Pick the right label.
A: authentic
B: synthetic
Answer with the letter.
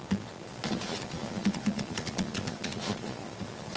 B